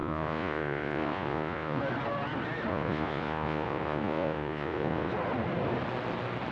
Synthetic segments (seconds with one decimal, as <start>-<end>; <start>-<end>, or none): 0.0-1.8; 2.7-5.1